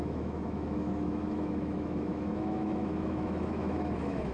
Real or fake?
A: fake